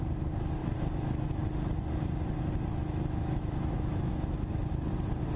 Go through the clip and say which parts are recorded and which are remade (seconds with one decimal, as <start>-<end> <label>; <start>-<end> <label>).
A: 0.0-0.6 recorded; 0.6-1.4 remade; 1.4-2.7 recorded; 2.7-4.9 remade; 4.9-5.4 recorded